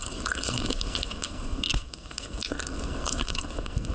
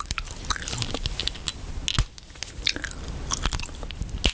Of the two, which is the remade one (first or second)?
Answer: first